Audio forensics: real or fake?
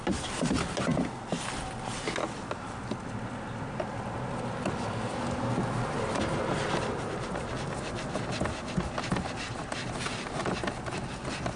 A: real